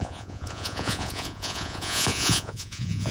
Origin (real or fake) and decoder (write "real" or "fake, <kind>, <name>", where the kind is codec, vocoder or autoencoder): fake, vocoder, Vocos